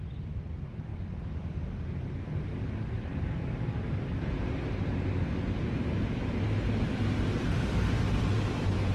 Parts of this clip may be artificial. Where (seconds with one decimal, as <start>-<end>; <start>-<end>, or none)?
none